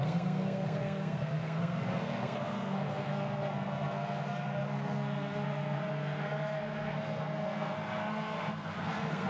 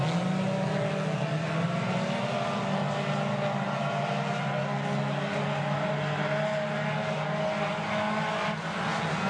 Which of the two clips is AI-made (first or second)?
first